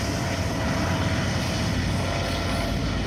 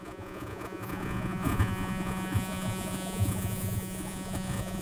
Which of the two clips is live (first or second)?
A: first